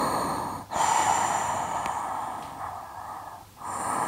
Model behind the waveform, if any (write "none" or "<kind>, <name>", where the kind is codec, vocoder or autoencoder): vocoder, BigVGAN v2